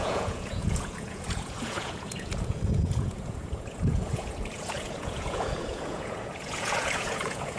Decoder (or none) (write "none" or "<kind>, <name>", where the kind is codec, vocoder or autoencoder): vocoder, Vocos